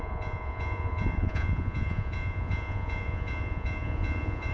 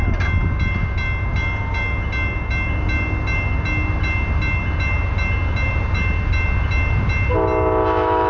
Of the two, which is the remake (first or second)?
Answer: first